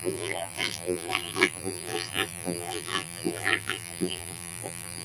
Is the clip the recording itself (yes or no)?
no